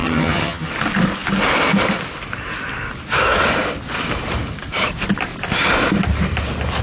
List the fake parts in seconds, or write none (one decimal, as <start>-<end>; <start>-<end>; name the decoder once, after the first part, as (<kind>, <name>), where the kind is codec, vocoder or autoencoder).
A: 0.0-0.7 (vocoder, HiFi-GAN)